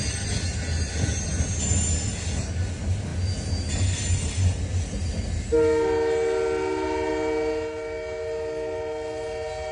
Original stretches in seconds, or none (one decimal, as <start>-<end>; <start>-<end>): 0.0-9.7